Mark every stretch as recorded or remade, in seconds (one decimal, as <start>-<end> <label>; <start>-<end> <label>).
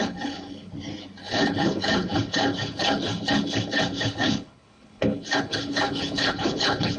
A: 0.0-0.7 remade; 0.7-1.2 recorded; 1.2-7.0 remade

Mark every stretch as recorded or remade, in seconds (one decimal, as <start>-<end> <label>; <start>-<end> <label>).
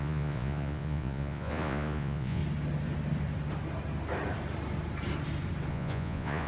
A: 0.0-2.4 remade; 2.4-5.7 recorded; 5.7-6.5 remade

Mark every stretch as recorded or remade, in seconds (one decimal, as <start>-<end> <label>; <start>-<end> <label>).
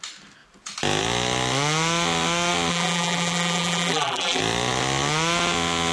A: 0.0-2.7 recorded; 2.7-4.4 remade; 4.4-5.9 recorded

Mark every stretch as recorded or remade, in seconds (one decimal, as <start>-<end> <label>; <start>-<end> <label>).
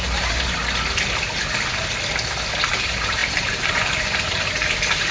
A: 0.0-0.6 remade; 0.6-2.7 recorded; 2.7-5.1 remade